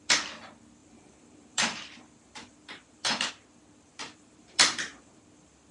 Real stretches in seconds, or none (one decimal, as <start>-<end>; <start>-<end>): 0.0-0.8; 3.3-3.9; 5.2-5.7